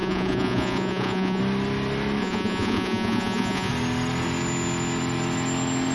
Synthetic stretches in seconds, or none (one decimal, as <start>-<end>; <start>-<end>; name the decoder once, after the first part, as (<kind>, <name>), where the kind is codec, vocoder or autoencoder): 0.0-1.4 (vocoder, Vocos); 2.2-3.7